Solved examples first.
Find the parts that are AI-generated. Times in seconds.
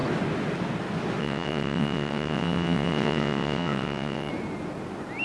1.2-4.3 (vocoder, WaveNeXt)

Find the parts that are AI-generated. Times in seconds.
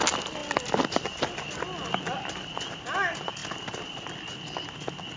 none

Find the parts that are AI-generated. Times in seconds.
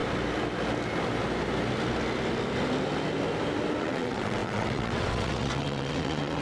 3.8-6.4 (vocoder, WaveNeXt)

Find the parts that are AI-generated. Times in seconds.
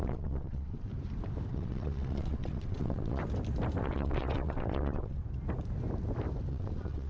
0.0-0.9 (vocoder, WaveNeXt); 1.5-3.2; 3.8-5.2; 6.5-7.1